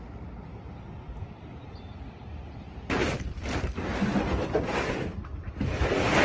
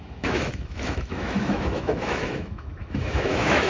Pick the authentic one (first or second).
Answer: first